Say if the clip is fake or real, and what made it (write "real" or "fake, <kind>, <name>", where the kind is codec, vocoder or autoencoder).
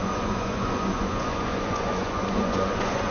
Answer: fake, vocoder, Vocos